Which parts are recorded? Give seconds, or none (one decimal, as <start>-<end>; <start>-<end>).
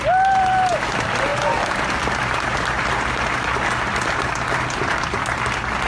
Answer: 0.0-5.9